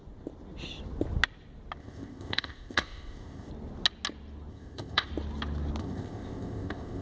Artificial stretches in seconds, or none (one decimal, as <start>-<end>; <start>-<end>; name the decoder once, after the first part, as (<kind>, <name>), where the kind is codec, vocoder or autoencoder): 1.8-3.5 (codec, ZipCodec); 4.5-5.1; 5.8-7.0